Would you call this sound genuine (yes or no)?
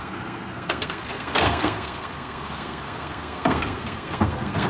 no